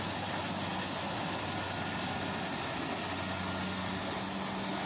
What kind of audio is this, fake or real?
real